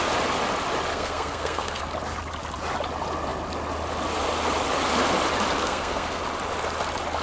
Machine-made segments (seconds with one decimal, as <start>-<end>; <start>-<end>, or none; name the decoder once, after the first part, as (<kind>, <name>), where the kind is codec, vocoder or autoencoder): 0.9-1.8 (codec, SNAC); 5.6-6.2